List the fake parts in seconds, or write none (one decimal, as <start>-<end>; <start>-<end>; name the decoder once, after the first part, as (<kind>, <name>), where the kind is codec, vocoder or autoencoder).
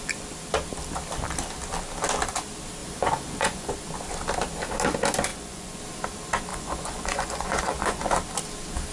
2.8-3.7 (vocoder, Vocos); 5.3-5.8; 6.5-8.0